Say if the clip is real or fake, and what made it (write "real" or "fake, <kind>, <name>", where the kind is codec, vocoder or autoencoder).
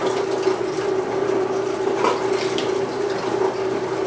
real